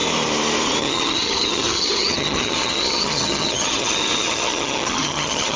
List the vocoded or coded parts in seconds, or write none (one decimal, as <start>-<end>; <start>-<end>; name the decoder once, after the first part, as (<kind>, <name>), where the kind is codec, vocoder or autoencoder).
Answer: 0.8-5.6 (vocoder, HiFi-GAN)